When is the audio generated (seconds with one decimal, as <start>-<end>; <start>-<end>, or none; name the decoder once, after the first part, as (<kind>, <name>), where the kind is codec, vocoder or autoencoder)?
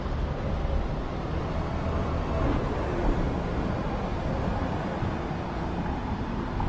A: none